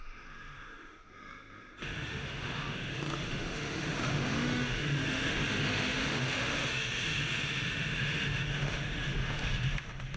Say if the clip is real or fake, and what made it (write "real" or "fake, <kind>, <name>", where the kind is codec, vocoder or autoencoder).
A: fake, autoencoder, DAC-VAE